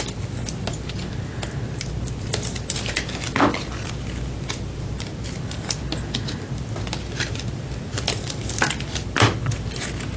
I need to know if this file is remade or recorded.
recorded